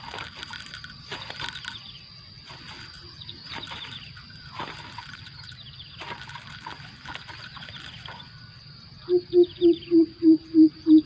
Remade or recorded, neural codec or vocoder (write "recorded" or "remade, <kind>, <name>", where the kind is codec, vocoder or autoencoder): recorded